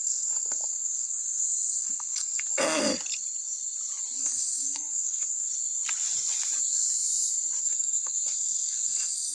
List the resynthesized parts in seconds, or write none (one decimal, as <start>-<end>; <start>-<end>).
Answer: 0.0-2.9; 4.2-5.5; 7.6-9.3